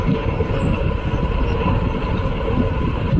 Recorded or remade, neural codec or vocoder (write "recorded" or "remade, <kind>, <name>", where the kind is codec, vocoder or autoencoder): remade, vocoder, BigVGAN v2